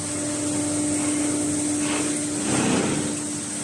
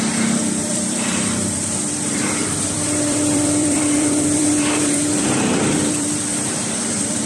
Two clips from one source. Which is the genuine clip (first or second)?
first